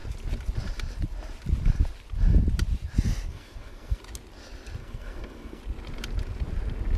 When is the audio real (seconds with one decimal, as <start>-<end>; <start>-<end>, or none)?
0.0-3.3; 4.0-4.8; 5.6-7.0

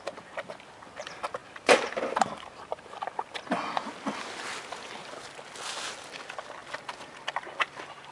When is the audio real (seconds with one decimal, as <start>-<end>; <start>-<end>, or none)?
0.0-8.1

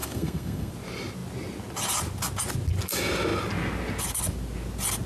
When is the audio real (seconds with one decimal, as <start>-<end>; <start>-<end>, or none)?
0.7-5.1

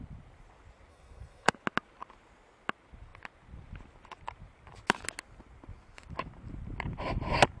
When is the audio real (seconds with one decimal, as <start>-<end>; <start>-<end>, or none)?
0.0-0.9; 1.5-7.6

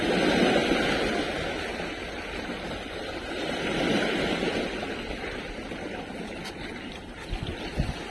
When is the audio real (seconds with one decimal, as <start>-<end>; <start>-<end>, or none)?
0.0-8.1

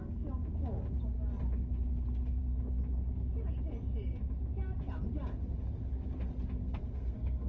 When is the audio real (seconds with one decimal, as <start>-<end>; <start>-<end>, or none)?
0.0-6.6

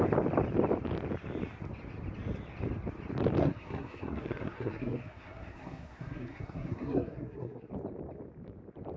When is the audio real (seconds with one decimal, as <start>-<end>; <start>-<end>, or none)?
0.0-3.4; 7.7-9.0

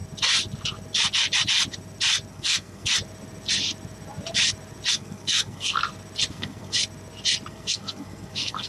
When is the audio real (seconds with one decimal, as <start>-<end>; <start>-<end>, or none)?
0.0-2.3; 2.9-4.9; 5.8-6.3; 6.8-7.5